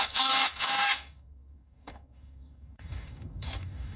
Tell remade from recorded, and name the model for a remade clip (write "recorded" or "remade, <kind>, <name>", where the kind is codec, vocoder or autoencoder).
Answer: remade, codec, DAC